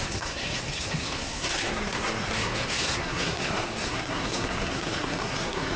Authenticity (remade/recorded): remade